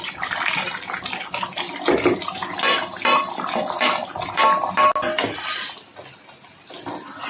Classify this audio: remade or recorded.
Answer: recorded